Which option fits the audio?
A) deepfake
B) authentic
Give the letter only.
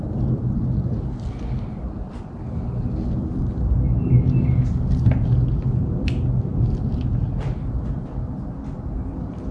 B